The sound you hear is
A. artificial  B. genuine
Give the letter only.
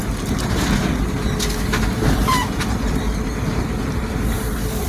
B